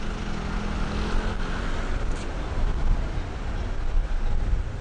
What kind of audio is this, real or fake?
real